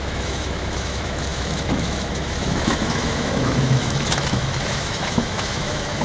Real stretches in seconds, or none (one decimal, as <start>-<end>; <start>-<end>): none